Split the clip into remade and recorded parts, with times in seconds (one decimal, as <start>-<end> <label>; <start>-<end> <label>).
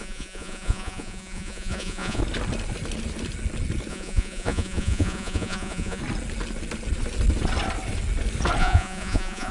0.0-2.2 remade; 2.2-3.9 recorded; 3.9-6.0 remade; 6.0-8.6 recorded; 8.6-9.5 remade